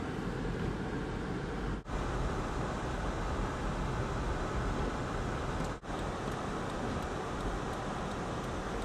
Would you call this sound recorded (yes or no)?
yes